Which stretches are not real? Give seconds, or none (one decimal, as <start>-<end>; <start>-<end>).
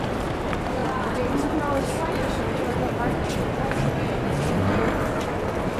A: 0.8-3.7